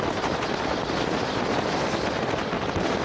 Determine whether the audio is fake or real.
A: fake